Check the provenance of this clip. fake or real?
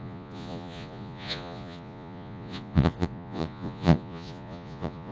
fake